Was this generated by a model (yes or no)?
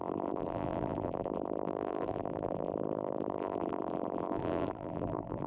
yes